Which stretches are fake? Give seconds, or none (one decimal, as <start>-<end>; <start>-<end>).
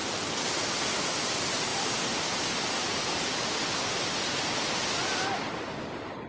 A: 1.2-1.7; 5.5-6.3